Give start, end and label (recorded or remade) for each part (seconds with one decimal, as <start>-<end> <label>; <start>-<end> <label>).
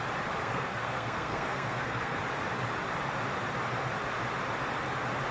0.0-0.4 recorded; 0.4-2.2 remade; 2.2-5.3 recorded